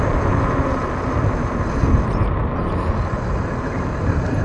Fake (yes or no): no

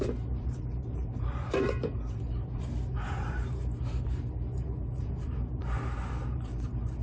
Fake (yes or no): yes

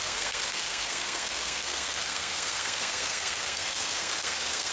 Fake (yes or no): yes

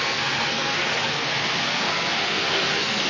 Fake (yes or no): yes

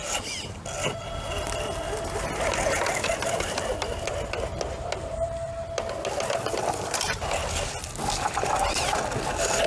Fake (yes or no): no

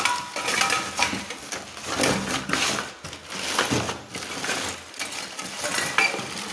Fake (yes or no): no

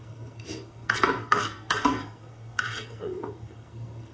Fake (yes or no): yes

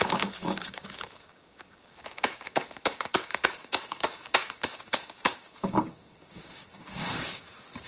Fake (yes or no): yes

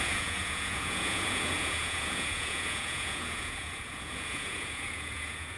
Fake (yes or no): yes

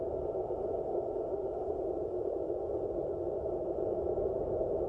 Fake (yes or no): no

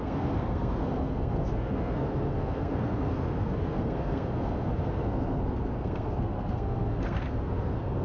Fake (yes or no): yes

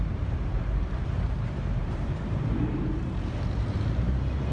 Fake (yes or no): yes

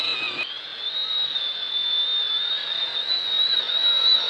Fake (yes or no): no